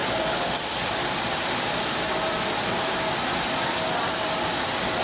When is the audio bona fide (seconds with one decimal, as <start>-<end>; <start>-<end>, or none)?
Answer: 3.0-5.0